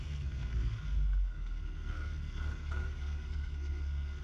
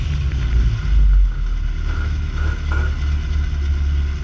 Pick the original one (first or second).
second